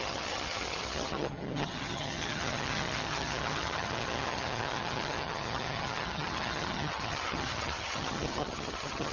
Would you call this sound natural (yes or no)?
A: no